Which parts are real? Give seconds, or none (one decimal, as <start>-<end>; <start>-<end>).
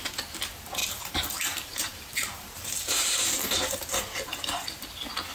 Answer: 0.0-0.8; 4.0-5.3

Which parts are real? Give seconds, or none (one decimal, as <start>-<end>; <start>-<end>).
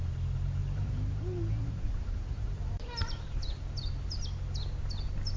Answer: 0.0-0.6; 3.8-5.4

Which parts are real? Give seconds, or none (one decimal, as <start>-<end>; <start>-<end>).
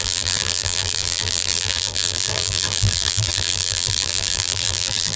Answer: none